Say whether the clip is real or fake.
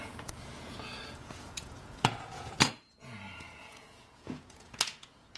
fake